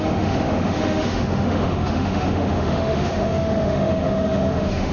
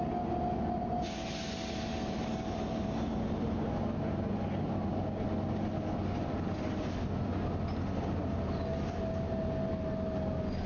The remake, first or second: first